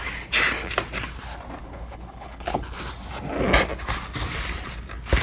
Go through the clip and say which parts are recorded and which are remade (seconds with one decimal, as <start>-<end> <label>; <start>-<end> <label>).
0.0-1.6 recorded; 1.6-2.8 remade; 2.8-5.2 recorded